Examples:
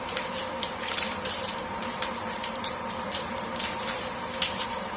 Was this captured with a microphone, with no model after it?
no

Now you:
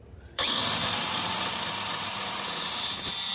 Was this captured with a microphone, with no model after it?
no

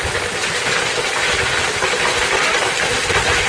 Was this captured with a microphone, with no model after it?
yes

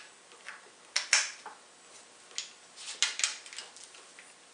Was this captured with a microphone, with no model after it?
yes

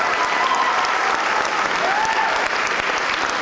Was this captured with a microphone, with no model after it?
yes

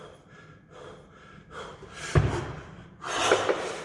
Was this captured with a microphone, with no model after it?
no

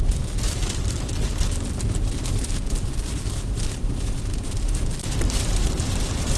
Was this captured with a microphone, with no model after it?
no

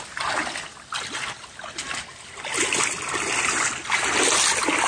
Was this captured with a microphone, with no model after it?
yes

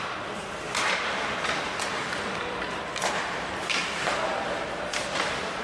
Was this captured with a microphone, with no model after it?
no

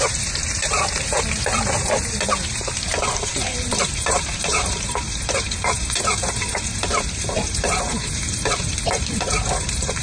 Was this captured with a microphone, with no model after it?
no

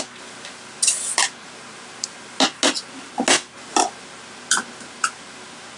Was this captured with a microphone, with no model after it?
yes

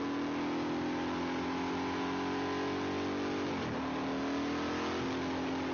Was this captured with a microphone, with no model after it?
yes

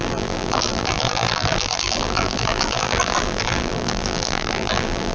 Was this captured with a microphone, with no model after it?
no